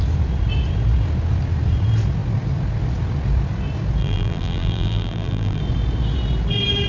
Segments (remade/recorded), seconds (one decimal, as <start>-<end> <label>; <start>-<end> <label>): 0.0-4.0 recorded; 4.0-5.6 remade; 5.6-6.9 recorded